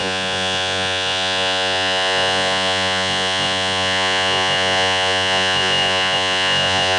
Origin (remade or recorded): remade